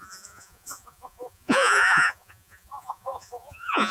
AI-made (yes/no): yes